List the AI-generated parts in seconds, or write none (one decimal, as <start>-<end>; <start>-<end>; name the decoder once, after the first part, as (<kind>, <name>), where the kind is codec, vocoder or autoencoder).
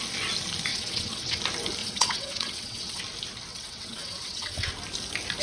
0.7-1.4 (vocoder, WaveNeXt); 1.8-3.0; 3.5-4.7